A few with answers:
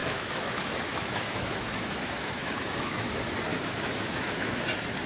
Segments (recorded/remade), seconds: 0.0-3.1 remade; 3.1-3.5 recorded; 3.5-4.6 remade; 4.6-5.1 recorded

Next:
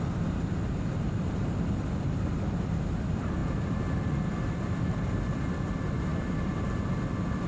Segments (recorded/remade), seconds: 0.0-7.5 recorded